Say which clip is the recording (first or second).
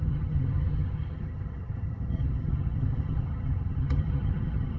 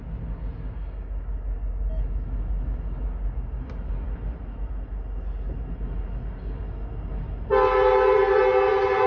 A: second